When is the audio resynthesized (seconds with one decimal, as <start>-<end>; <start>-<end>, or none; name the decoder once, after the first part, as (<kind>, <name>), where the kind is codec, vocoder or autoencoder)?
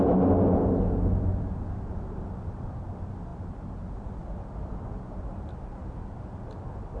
none